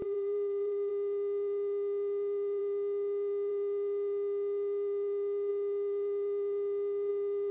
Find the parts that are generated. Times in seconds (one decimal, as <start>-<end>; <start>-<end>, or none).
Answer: 0.0-0.9

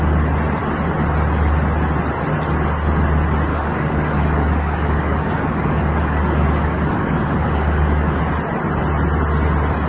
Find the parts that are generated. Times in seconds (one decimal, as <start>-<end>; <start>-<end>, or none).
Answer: 3.5-8.2

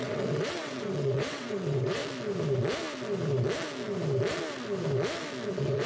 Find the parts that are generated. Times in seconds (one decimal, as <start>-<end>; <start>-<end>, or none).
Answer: 0.0-2.0; 5.5-5.9

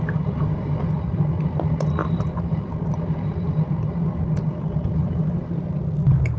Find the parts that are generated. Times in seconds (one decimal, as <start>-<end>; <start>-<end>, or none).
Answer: none

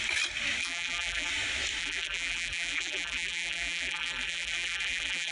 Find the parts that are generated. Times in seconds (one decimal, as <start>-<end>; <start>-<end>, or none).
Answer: 0.6-1.3; 1.8-5.3

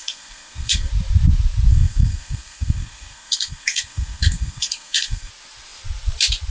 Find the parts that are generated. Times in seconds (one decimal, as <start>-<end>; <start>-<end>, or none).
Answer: 0.0-0.9; 1.7-5.3